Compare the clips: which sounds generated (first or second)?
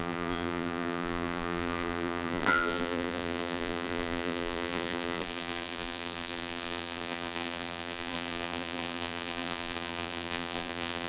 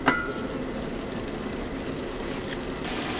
first